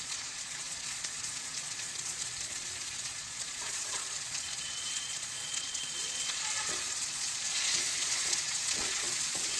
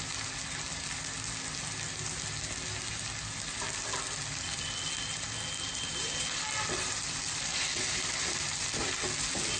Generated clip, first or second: first